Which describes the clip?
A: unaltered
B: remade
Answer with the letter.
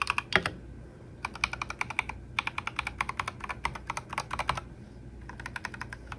A